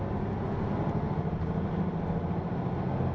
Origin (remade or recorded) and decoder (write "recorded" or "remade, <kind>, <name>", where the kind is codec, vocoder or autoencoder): recorded